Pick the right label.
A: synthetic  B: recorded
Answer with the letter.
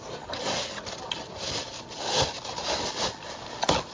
B